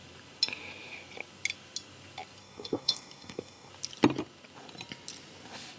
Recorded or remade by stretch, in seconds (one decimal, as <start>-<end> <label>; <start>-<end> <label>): 0.0-2.4 recorded; 2.4-3.7 remade; 3.7-5.8 recorded